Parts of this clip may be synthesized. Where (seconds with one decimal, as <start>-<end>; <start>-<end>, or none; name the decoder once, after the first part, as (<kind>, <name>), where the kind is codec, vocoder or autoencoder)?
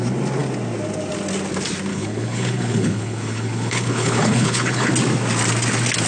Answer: 1.9-4.9 (codec, HILCodec)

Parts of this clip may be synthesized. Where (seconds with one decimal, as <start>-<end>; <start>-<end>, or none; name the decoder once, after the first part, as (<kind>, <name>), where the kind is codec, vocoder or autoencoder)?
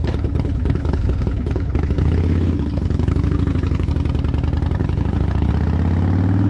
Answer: 0.0-3.9 (codec, HILCodec); 4.8-5.5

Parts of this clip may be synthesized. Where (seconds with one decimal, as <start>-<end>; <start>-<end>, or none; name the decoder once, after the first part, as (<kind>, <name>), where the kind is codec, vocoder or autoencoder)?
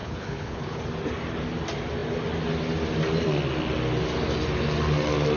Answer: 0.0-0.8 (codec, HILCodec)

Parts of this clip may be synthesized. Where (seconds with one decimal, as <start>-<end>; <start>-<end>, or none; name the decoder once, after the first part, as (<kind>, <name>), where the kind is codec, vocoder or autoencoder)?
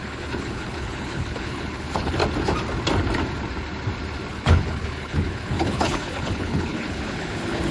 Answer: 0.0-2.2 (codec, HILCodec); 4.3-7.7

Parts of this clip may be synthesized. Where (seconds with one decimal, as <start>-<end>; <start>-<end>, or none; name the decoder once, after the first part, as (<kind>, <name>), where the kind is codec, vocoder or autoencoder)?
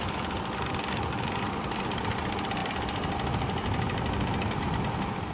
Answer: none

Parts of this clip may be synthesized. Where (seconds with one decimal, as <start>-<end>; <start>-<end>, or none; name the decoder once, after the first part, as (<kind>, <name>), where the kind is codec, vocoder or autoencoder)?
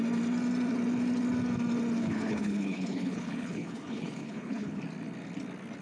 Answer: 2.0-4.8 (codec, HILCodec)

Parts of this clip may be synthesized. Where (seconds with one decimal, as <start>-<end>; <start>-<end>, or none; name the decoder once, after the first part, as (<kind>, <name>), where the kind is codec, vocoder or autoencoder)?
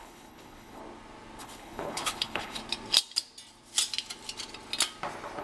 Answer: 0.0-0.8 (codec, HILCodec); 1.4-2.6